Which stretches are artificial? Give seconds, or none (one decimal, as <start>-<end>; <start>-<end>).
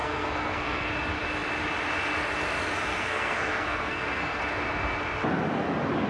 0.0-0.9; 2.9-4.4